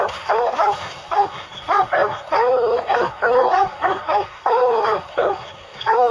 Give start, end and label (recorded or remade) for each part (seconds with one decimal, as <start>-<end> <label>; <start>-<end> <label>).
0.0-6.1 remade